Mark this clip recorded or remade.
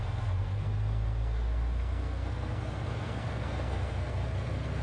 remade